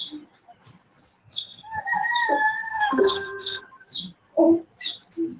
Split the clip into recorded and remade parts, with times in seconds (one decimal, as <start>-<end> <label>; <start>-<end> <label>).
0.0-1.2 recorded; 1.2-1.8 remade; 1.8-2.7 recorded; 2.7-3.6 remade; 3.6-5.4 recorded